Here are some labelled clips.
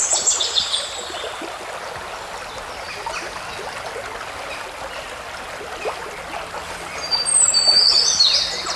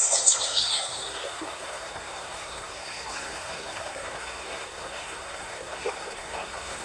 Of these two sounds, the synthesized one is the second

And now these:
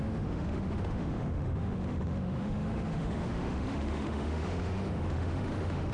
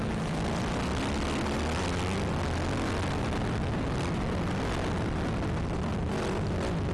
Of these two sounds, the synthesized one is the first